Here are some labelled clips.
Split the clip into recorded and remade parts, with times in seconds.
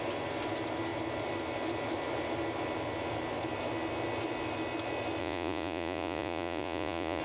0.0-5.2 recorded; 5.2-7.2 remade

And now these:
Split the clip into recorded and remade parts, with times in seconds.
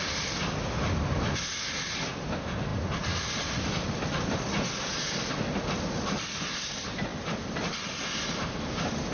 0.0-9.1 recorded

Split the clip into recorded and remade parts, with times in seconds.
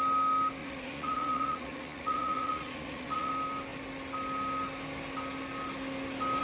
0.0-0.6 recorded; 0.6-3.3 remade; 3.3-6.4 recorded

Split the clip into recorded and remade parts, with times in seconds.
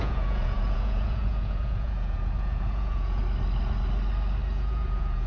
0.0-3.2 remade; 3.2-4.5 recorded; 4.5-5.3 remade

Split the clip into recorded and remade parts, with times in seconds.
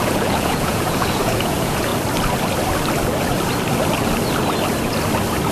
0.0-1.9 remade; 1.9-5.5 recorded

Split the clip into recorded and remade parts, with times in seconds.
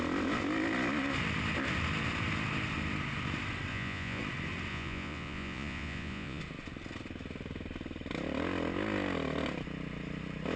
0.0-3.7 recorded; 3.7-4.2 remade; 4.2-4.7 recorded; 4.7-6.4 remade; 6.4-10.6 recorded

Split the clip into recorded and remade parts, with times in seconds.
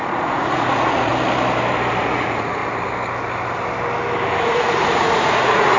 0.0-1.1 remade; 1.1-2.0 recorded; 2.0-2.6 remade; 2.6-4.4 recorded; 4.4-5.8 remade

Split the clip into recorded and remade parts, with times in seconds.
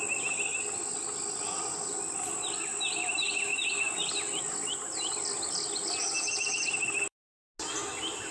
0.0-8.3 recorded